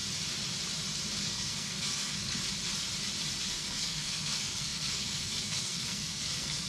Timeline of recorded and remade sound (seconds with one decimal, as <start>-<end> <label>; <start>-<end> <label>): 0.0-1.2 recorded; 1.2-2.2 remade; 2.2-3.4 recorded; 3.4-6.7 remade